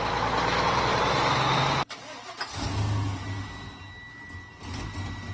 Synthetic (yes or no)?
no